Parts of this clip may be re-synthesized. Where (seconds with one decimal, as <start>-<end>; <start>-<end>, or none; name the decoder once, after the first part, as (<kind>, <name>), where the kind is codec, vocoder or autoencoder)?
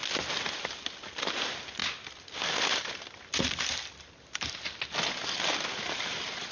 none